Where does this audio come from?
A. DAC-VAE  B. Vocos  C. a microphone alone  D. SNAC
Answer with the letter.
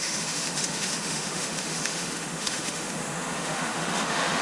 A